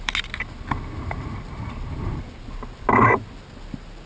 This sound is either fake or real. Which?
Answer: real